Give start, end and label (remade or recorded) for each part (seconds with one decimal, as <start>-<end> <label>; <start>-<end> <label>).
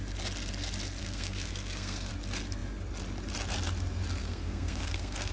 0.0-1.0 recorded; 1.0-2.1 remade; 2.1-4.2 recorded; 4.2-5.3 remade